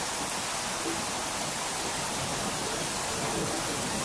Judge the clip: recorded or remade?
recorded